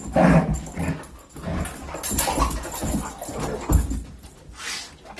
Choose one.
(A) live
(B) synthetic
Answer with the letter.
A